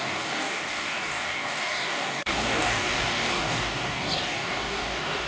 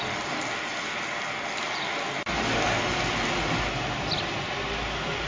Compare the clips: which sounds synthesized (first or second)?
first